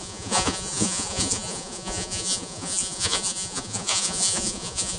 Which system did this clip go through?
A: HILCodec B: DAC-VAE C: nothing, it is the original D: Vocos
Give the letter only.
D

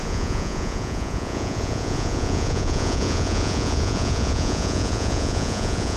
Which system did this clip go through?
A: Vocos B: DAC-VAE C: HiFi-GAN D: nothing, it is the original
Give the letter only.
A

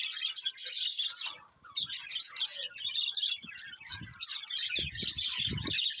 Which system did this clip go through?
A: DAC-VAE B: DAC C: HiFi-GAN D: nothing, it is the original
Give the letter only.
D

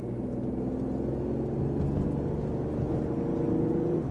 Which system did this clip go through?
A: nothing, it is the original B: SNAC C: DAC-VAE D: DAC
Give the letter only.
A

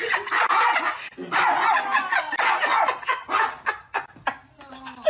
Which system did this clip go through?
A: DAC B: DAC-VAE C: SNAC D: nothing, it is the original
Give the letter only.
D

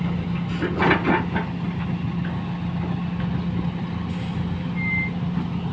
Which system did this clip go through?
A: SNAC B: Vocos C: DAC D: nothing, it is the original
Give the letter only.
D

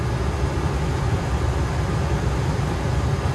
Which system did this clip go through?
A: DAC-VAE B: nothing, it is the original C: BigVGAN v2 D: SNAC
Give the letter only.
B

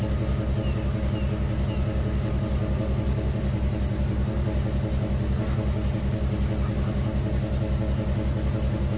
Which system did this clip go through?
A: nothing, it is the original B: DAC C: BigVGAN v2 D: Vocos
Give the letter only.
A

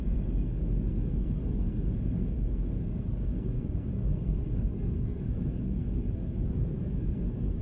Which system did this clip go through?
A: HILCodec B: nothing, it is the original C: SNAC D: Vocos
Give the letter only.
C